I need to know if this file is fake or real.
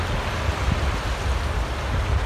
real